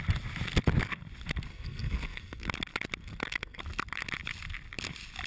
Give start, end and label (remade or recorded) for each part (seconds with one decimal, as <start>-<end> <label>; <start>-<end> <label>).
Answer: 0.0-1.5 recorded; 1.5-2.5 remade; 2.5-3.0 recorded; 3.0-3.6 remade; 3.6-5.3 recorded